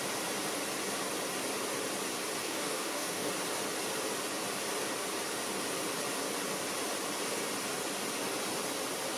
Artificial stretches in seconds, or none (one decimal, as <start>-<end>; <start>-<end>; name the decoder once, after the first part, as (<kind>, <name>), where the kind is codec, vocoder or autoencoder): 2.4-3.3 (codec, DAC)